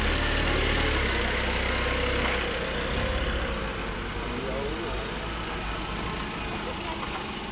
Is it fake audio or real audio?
real